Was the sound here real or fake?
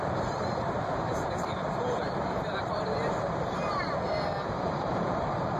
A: fake